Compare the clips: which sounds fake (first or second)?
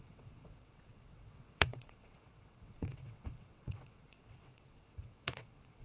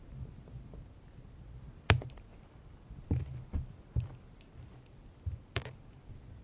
first